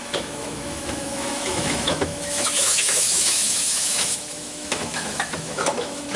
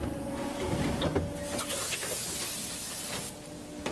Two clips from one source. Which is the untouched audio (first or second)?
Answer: second